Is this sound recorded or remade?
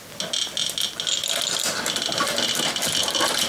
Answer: recorded